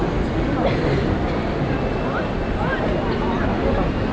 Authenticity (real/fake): real